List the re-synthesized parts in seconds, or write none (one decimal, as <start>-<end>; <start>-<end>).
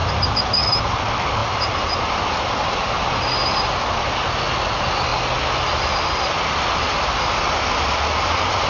none